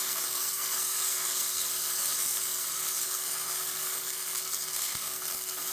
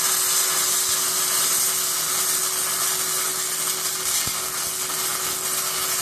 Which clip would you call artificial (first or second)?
first